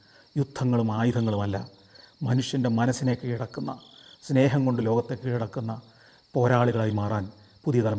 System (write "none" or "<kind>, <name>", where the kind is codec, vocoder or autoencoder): none